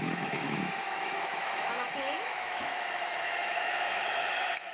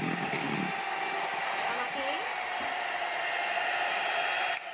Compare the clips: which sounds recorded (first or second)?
second